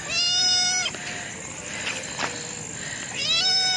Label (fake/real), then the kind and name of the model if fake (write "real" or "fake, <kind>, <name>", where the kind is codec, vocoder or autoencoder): real